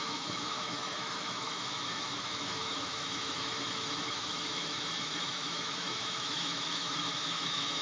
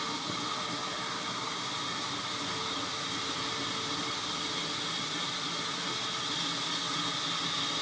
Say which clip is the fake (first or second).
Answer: first